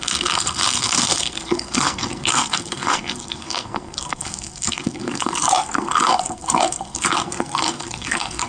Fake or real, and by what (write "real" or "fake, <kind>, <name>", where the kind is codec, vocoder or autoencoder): fake, codec, SNAC